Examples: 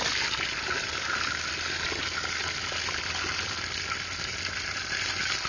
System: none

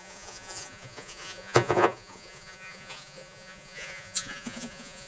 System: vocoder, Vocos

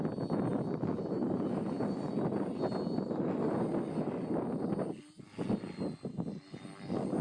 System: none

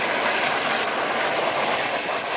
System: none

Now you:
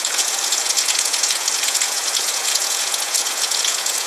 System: vocoder, Vocos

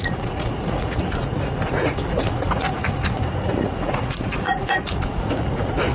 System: vocoder, Vocos